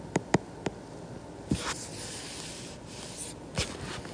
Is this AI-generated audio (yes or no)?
no